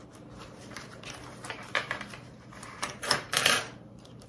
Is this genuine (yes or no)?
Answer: no